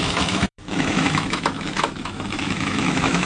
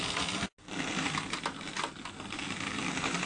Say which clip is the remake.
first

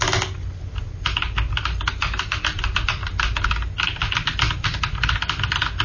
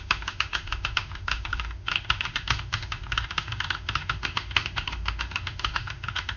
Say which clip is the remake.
second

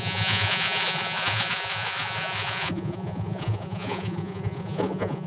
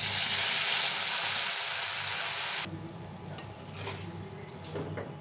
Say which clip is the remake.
first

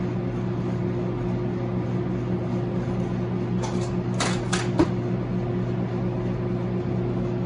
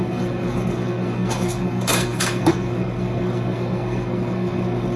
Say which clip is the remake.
second